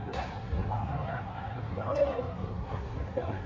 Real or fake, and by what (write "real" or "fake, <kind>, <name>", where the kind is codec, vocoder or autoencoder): fake, codec, SNAC